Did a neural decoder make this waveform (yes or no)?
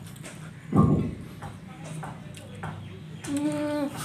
no